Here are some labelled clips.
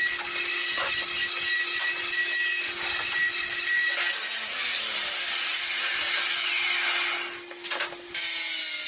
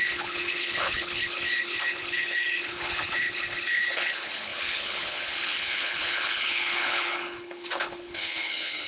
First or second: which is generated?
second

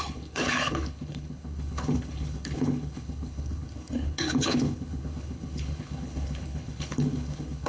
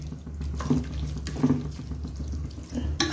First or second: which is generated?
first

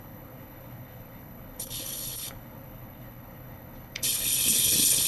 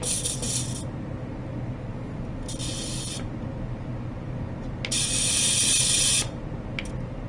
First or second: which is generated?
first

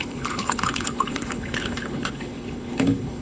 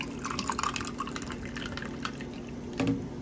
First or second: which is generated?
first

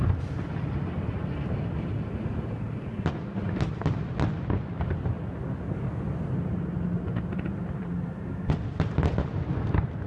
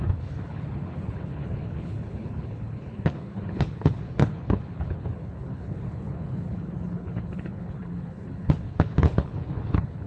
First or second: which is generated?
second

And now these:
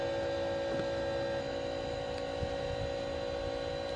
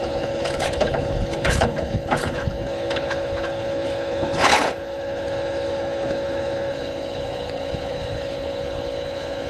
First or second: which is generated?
second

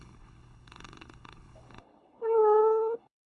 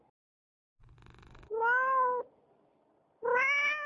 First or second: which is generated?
first